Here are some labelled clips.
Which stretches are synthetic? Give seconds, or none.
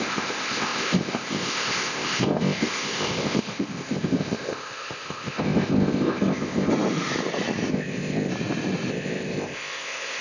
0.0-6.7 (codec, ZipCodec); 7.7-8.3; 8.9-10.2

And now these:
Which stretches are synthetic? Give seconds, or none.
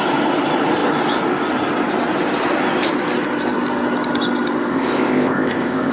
4.7-5.9 (codec, ZipCodec)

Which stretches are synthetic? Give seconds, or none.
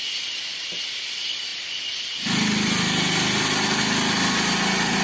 none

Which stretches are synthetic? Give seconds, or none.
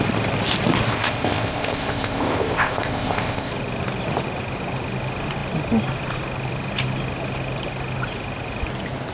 0.9-3.5 (codec, ZipCodec)